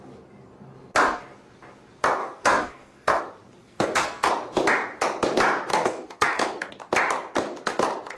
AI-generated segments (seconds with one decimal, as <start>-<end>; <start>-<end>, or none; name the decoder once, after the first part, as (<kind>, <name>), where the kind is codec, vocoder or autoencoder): 2.2-3.2 (codec, SNAC); 3.6-4.3; 5.7-6.7